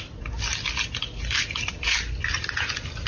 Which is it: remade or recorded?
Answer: recorded